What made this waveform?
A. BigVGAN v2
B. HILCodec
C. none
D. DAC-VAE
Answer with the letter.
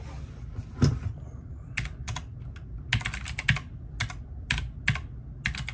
C